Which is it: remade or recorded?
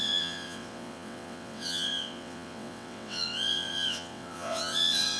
remade